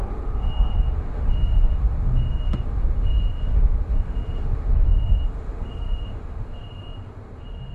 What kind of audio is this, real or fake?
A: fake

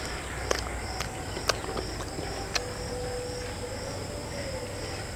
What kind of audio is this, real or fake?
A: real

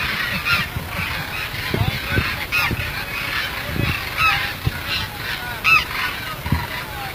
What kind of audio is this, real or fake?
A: real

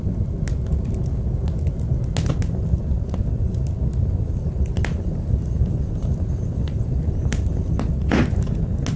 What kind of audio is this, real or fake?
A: real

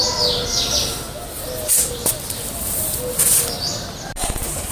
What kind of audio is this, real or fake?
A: real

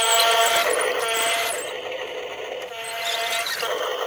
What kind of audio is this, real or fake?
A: real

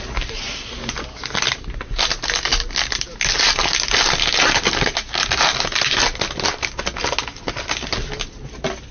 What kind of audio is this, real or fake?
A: real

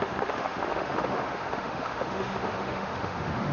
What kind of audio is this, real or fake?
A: fake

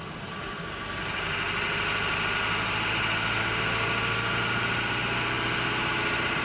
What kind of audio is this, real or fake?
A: real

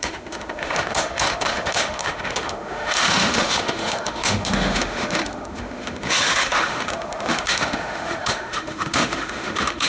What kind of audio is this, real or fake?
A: fake